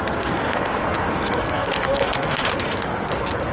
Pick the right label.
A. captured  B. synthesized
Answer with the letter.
B